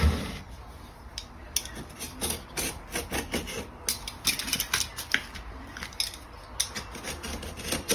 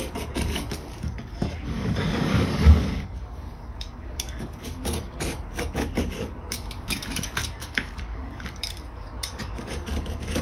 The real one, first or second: first